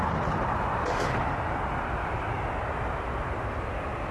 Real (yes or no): yes